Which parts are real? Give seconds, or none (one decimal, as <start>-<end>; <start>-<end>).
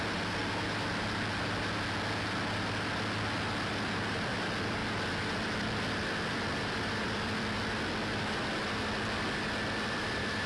0.4-3.7; 4.8-6.3; 8.8-9.9